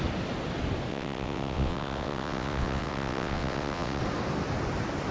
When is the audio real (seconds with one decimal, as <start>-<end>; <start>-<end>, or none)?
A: 0.0-0.9; 4.0-5.1